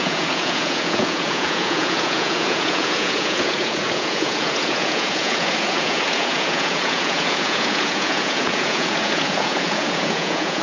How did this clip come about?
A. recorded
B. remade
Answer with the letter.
B